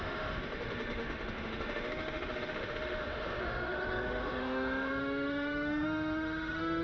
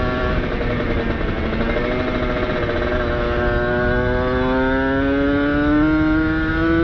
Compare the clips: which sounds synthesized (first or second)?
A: first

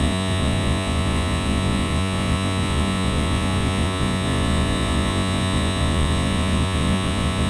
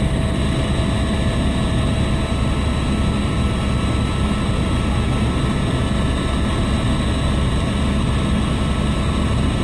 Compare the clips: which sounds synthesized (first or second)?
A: first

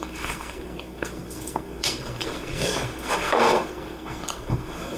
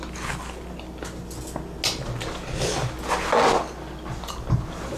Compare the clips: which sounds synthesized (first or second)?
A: first